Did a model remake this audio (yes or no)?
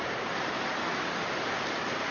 yes